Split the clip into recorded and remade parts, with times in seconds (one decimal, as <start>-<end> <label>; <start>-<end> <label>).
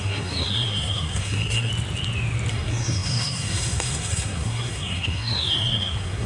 0.0-1.7 remade; 1.7-2.5 recorded; 2.5-6.3 remade